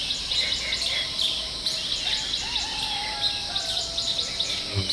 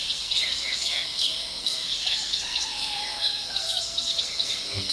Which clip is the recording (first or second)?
first